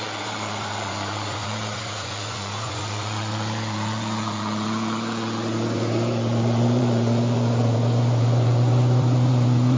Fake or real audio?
fake